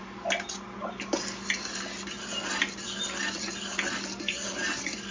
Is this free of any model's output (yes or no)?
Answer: yes